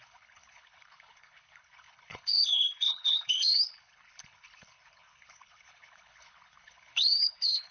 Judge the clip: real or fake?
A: fake